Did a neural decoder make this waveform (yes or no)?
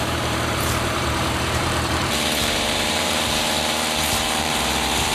yes